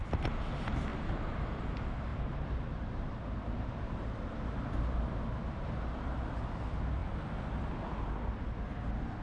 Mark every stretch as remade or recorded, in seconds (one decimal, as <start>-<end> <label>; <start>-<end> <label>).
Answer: 0.0-0.9 recorded; 0.9-1.7 remade; 1.7-2.1 recorded; 2.1-6.4 remade; 6.4-9.2 recorded